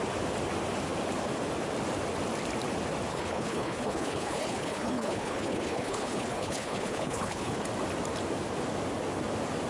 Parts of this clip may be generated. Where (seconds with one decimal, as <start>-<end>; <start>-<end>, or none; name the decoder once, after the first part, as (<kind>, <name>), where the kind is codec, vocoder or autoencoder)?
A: 3.1-7.6 (codec, HILCodec)